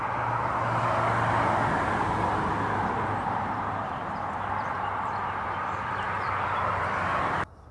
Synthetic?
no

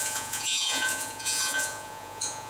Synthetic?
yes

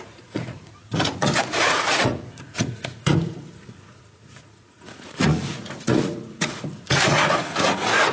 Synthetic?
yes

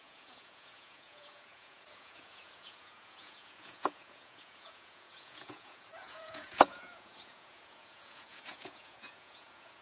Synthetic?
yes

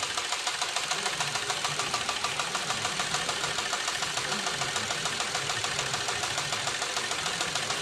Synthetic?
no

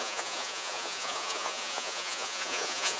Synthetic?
yes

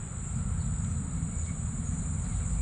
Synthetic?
no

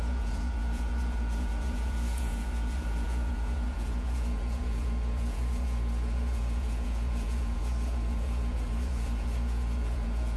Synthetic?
yes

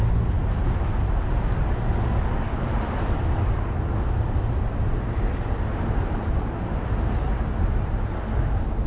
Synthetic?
no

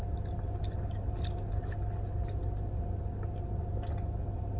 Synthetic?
no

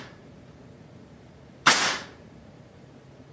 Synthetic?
yes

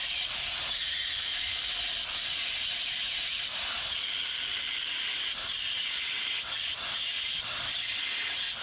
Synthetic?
no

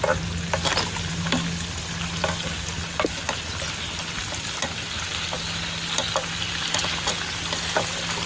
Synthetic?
no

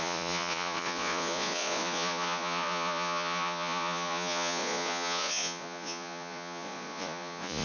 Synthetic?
yes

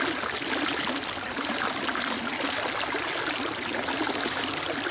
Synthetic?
no